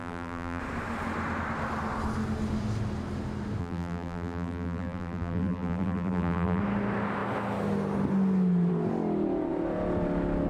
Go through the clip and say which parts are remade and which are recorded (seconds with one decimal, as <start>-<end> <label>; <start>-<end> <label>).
0.0-0.6 remade; 0.6-3.6 recorded; 3.6-6.6 remade; 6.6-10.5 recorded